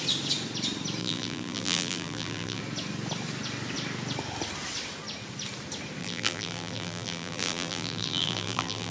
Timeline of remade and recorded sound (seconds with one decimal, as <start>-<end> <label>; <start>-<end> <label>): 0.0-1.0 recorded; 1.0-2.6 remade; 2.6-6.0 recorded; 6.0-8.9 remade